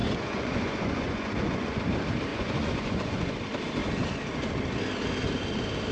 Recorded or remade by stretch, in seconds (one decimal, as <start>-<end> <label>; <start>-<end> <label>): 0.0-1.8 remade; 1.8-2.3 recorded; 2.3-3.4 remade; 3.4-5.9 recorded